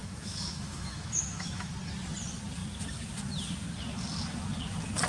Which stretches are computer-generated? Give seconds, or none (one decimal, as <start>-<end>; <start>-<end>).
0.0-1.7